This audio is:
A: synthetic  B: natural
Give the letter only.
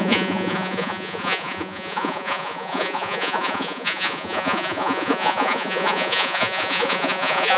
A